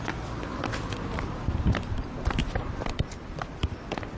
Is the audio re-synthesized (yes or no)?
no